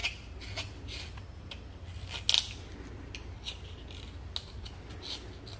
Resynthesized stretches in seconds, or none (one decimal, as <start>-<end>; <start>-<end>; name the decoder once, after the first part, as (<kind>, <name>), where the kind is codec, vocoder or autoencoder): none